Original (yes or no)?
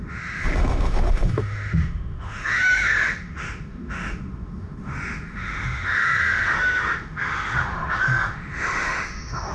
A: no